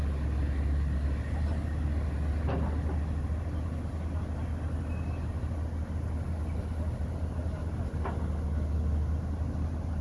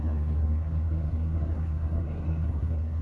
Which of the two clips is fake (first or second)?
second